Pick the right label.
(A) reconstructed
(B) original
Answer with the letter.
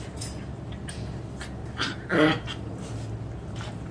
B